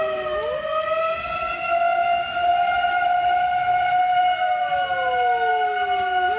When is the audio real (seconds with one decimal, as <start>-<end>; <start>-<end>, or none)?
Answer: 0.0-2.5; 4.2-6.4